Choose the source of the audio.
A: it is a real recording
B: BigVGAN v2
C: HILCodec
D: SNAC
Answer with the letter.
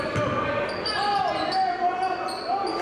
A